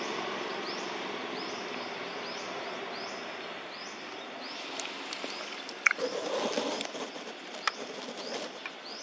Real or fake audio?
real